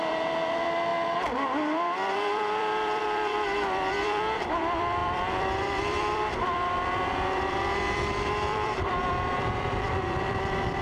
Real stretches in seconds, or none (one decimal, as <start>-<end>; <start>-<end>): none